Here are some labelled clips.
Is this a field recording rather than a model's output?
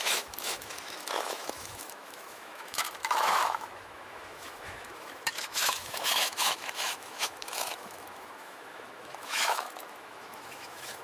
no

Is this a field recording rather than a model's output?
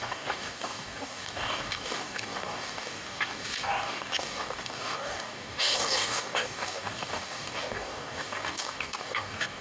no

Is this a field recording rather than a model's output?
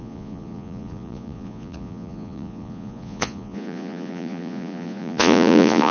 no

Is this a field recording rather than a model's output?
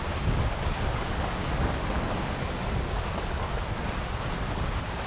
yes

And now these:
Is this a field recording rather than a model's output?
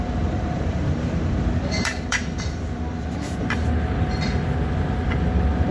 no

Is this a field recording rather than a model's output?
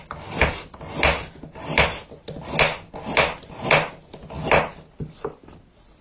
yes